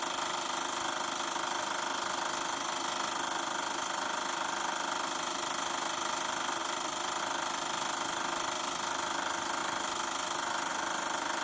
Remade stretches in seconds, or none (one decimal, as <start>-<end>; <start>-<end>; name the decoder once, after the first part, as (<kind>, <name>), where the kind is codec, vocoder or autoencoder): 6.6-7.2 (vocoder, BigVGAN v2)